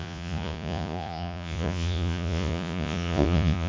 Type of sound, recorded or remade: remade